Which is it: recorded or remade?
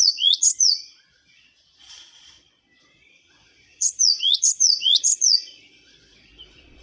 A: remade